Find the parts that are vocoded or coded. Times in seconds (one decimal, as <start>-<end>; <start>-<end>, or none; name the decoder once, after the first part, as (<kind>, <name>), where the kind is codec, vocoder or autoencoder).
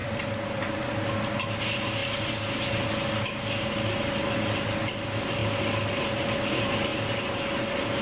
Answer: 0.0-0.9 (vocoder, BigVGAN v2)